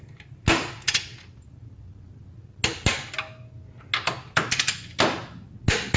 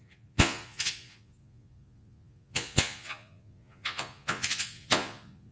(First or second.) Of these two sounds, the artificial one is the second